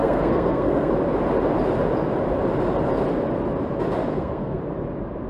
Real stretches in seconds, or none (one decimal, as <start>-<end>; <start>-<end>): 0.9-4.1; 4.6-5.3